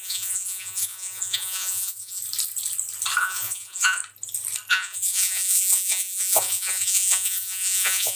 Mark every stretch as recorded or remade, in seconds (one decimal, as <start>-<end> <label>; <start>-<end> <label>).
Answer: 0.0-2.2 remade; 2.2-3.2 recorded; 3.2-4.0 remade; 4.0-4.7 recorded; 4.7-8.2 remade